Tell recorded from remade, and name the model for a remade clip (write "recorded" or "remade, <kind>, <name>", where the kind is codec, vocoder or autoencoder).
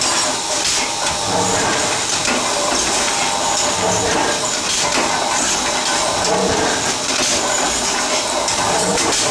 remade, vocoder, BigVGAN v2